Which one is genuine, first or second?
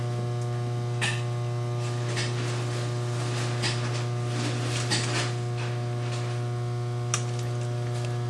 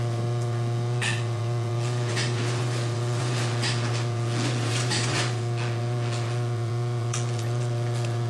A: first